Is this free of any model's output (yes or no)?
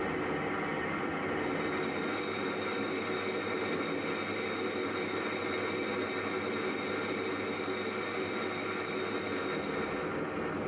yes